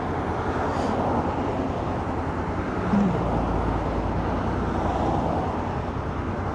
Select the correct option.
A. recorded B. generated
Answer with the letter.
A